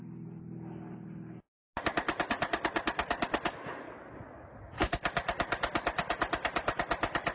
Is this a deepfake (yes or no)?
no